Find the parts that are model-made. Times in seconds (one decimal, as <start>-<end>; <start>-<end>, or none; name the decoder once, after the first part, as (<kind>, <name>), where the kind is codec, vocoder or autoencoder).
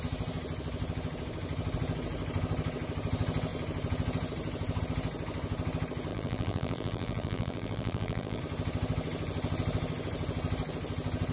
6.1-8.4 (vocoder, BigVGAN v2)